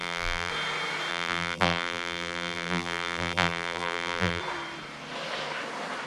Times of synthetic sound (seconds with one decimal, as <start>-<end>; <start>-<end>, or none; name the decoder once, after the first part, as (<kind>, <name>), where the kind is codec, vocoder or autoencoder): 0.0-0.5 (vocoder, BigVGAN v2); 1.1-4.4